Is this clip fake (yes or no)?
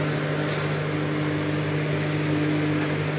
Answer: no